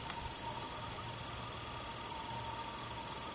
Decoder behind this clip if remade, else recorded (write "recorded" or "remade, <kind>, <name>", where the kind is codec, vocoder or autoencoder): recorded